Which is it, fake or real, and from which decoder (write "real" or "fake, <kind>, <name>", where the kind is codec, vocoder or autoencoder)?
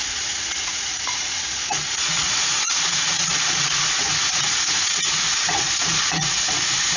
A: fake, vocoder, Vocos